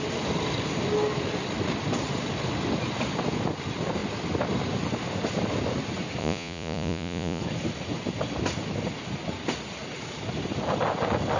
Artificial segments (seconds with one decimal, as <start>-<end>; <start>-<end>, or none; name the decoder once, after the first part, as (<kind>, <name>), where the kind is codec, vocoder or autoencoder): 6.2-7.4 (vocoder, Vocos)